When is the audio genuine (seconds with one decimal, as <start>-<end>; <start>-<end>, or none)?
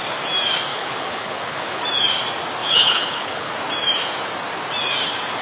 0.0-0.7; 1.8-2.6; 3.5-5.4